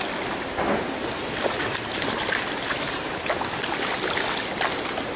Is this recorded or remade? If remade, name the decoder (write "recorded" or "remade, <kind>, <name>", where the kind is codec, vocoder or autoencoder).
recorded